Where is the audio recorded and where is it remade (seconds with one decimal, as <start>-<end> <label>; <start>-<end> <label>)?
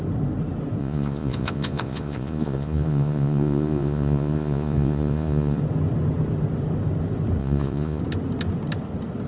0.0-0.8 recorded; 0.8-5.6 remade; 5.6-7.4 recorded; 7.4-8.0 remade; 8.0-9.3 recorded